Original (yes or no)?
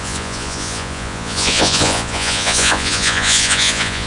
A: no